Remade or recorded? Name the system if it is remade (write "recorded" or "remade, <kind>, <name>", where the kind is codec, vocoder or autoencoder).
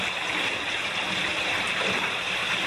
recorded